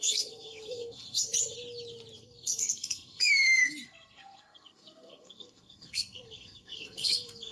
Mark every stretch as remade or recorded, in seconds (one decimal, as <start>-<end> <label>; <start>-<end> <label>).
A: 0.0-1.3 remade; 1.3-2.2 recorded; 2.2-7.5 remade